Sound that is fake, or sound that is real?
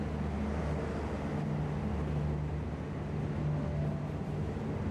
real